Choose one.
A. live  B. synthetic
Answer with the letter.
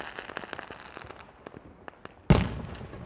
A